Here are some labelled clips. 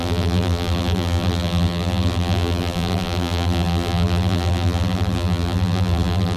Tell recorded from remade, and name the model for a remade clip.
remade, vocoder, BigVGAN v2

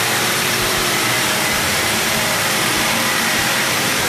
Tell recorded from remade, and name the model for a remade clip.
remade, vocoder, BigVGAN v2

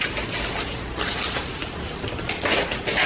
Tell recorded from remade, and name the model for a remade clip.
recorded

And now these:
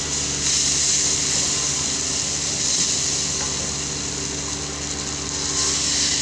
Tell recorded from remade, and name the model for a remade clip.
recorded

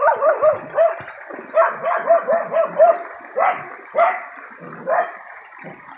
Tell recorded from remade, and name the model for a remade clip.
remade, vocoder, BigVGAN v2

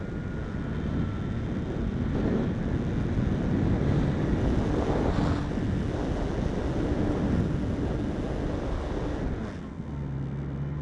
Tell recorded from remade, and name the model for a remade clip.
recorded